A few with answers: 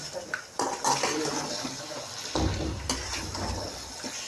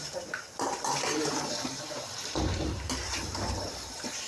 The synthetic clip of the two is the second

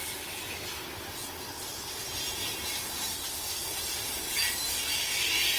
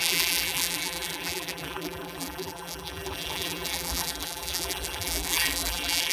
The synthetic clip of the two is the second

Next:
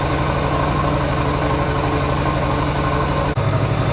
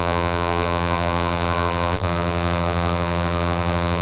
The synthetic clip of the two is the second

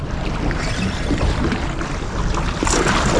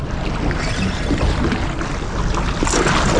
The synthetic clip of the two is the first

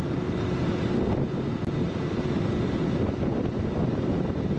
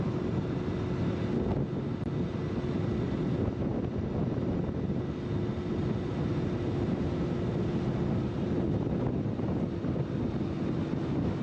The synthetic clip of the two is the first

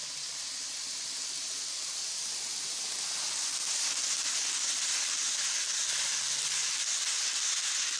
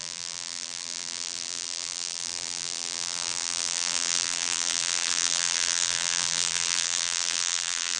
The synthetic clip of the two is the second